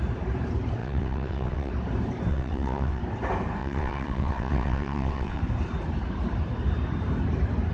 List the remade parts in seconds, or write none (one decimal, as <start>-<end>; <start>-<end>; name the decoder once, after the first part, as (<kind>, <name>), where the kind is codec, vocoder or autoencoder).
0.8-1.7 (vocoder, WaveNeXt); 2.3-3.0; 3.6-5.4